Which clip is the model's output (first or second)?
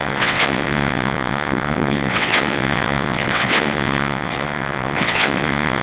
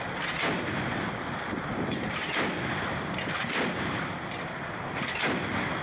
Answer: first